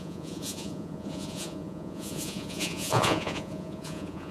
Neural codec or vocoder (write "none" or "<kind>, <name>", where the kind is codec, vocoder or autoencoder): vocoder, Vocos